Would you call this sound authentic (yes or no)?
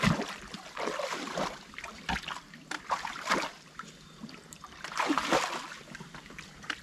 yes